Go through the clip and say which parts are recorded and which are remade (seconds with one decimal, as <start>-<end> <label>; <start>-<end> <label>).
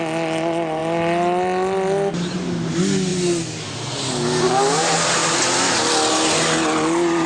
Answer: 0.0-7.3 recorded